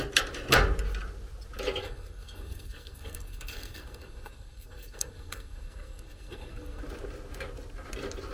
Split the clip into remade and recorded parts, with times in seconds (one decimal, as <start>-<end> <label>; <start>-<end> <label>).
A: 0.0-1.8 recorded; 1.8-6.8 remade; 6.8-8.3 recorded